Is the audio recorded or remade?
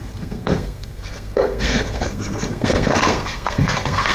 remade